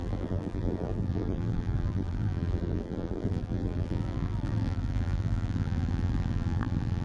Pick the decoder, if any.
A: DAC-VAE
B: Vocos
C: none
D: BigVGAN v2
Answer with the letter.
D